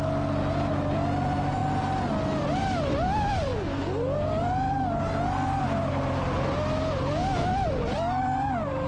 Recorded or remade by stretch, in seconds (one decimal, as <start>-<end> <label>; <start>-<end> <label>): 0.0-8.9 recorded